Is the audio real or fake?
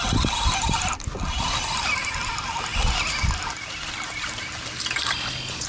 real